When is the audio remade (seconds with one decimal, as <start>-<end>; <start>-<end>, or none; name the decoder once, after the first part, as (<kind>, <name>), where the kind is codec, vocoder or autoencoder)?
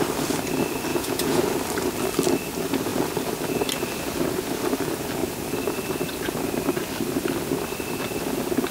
0.9-1.4 (vocoder, Vocos)